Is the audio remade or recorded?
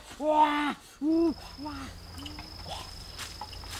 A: recorded